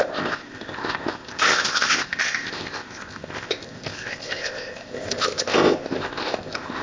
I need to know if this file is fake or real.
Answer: fake